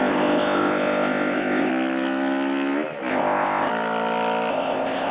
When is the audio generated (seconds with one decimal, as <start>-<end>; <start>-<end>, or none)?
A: 0.0-1.7; 3.1-3.7; 4.5-5.1